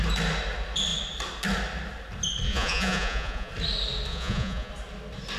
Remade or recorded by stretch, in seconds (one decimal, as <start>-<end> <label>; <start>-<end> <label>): 0.0-2.5 recorded; 2.5-3.5 remade; 3.5-4.1 recorded; 4.1-4.7 remade; 4.7-5.4 recorded